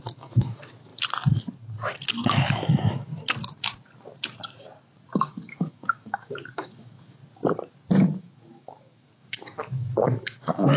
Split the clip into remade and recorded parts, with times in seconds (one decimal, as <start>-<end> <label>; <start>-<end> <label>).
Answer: 0.0-0.9 remade; 0.9-2.1 recorded; 2.1-3.1 remade; 3.1-5.1 recorded; 5.1-7.2 remade; 7.2-8.2 recorded; 8.2-10.8 remade